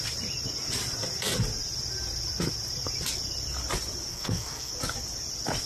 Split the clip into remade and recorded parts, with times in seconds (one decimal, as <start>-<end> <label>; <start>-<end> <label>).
0.0-4.1 recorded; 4.1-4.7 remade; 4.7-5.7 recorded